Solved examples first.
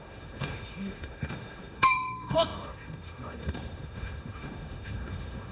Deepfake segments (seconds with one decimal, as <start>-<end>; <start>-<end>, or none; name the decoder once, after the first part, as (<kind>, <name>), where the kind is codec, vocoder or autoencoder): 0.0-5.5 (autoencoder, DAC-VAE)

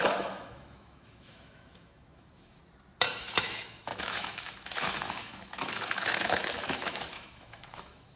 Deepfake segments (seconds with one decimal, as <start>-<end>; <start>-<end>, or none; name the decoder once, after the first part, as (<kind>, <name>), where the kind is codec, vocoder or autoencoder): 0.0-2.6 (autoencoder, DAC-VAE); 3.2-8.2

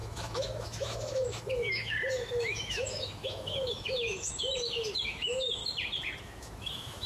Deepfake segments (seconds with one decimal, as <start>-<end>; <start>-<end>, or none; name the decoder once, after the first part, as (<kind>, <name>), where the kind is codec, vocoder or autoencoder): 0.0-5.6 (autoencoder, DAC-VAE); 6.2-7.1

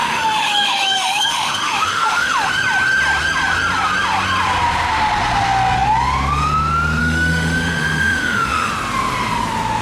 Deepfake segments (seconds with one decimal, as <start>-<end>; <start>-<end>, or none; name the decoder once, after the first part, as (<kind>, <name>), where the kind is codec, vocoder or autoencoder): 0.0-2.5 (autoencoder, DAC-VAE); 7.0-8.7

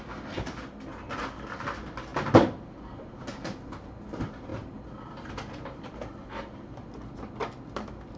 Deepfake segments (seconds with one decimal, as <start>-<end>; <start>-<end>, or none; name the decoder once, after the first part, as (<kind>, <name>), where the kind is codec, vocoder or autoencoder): none